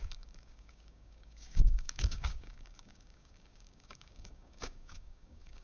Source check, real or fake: fake